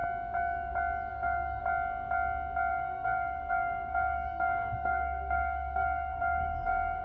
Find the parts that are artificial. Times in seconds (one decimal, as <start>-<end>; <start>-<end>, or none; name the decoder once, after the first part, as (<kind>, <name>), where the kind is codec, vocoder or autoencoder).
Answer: 1.1-1.6 (codec, SNAC); 2.7-7.0